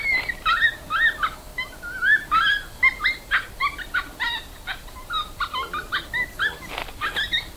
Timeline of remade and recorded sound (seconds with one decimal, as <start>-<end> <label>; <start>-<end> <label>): 0.0-7.6 recorded